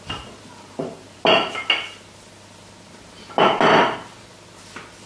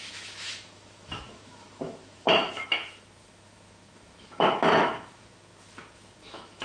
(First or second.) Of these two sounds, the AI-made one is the second